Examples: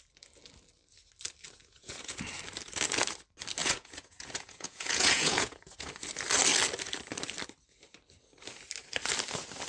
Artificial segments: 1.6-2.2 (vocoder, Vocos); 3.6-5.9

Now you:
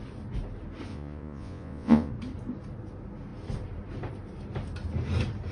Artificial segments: 0.9-2.1 (vocoder, Vocos)